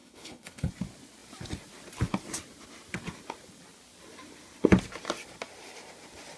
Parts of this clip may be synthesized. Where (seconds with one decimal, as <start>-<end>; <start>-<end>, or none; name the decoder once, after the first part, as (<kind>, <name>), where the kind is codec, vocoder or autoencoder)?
0.0-0.7 (codec, HILCodec)

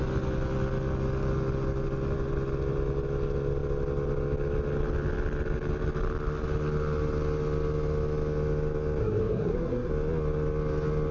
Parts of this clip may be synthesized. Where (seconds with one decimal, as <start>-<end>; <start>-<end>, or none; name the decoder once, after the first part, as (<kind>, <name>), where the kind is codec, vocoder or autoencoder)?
9.0-9.9 (codec, SNAC)

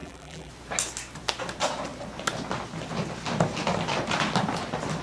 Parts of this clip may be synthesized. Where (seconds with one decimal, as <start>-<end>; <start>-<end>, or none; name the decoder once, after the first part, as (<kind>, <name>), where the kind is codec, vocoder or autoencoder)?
0.0-0.5 (vocoder, BigVGAN v2)

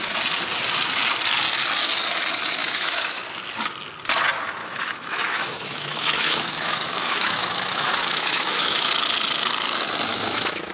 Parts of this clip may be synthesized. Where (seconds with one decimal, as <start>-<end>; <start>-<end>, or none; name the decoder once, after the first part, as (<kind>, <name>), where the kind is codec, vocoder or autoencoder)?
2.6-3.2 (autoencoder, DAC-VAE); 4.6-8.9; 10.1-10.7

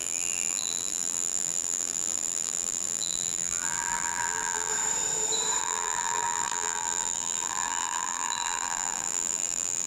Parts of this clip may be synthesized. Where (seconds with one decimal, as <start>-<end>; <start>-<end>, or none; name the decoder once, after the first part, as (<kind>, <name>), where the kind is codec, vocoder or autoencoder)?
0.0-4.7 (vocoder, BigVGAN v2); 5.6-9.9

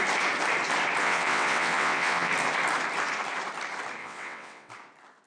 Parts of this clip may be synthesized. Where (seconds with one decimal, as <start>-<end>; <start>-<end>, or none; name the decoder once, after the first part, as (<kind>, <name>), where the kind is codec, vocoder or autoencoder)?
1.0-2.3 (vocoder, WaveNeXt); 4.0-4.7

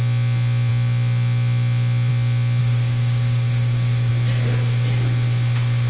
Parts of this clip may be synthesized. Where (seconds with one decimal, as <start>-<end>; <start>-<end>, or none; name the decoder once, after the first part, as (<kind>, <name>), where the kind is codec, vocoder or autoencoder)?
2.6-4.1 (codec, DAC)

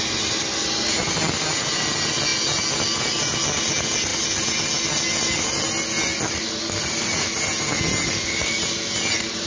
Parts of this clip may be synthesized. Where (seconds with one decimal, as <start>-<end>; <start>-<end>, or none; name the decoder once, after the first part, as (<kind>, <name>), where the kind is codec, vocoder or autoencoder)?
none